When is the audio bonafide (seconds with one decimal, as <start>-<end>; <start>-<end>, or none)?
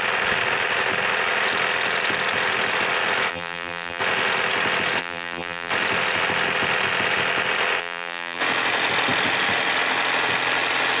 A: 0.0-3.3; 4.0-5.0; 5.7-7.8; 8.4-11.0